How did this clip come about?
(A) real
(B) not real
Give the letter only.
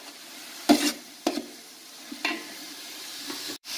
B